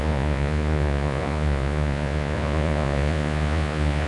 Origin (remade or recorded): remade